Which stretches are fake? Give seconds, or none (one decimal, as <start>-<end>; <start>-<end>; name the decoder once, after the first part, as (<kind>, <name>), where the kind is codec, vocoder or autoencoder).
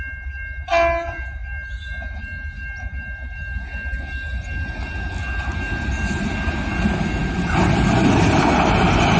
none